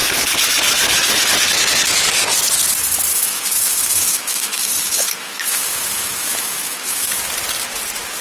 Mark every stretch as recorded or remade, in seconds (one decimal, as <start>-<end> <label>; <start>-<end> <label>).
0.0-3.1 recorded; 3.1-7.2 remade; 7.2-8.2 recorded